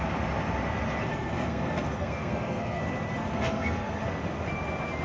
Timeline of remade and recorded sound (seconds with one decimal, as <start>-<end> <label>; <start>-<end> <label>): 0.0-1.1 recorded; 1.1-2.8 remade; 2.8-3.3 recorded; 3.3-4.0 remade; 4.0-5.0 recorded